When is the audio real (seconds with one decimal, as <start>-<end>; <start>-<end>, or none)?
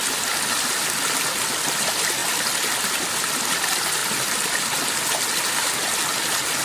0.0-6.6